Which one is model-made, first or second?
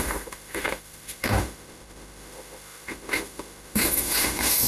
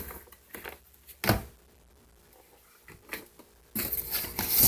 first